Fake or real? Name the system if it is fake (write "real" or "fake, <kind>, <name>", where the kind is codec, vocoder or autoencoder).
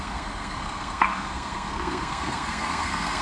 fake, codec, SNAC